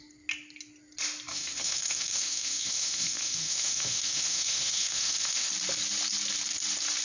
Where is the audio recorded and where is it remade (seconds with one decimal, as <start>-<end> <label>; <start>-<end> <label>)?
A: 0.0-1.3 recorded; 1.3-5.5 remade; 5.5-7.0 recorded